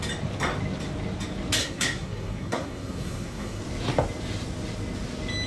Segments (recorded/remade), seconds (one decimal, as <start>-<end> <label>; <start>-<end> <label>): 0.0-1.6 recorded; 1.6-3.6 remade; 3.6-5.5 recorded